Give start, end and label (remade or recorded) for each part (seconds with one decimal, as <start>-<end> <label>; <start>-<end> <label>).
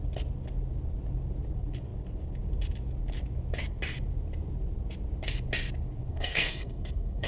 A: 0.0-6.1 recorded; 6.1-7.3 remade